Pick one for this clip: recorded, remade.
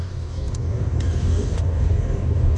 remade